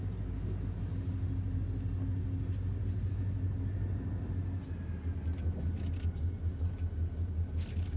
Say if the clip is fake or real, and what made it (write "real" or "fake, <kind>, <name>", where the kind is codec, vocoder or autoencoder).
real